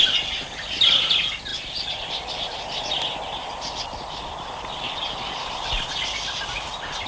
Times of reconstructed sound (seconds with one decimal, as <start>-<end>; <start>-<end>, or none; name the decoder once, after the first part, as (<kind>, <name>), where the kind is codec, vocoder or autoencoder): none